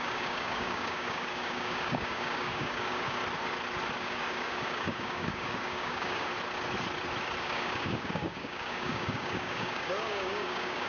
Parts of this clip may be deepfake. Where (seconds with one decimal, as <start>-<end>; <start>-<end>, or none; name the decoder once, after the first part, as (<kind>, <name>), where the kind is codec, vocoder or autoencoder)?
0.0-3.2 (codec, DAC); 4.0-6.3; 7.4-10.9